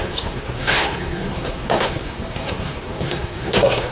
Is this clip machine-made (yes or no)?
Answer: yes